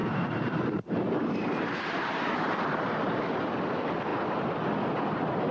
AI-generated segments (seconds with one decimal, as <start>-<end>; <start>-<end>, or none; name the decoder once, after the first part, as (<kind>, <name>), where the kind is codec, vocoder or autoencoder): 0.0-2.8 (vocoder, BigVGAN v2)